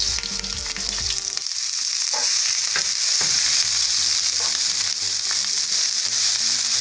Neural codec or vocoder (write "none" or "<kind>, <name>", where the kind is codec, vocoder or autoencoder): none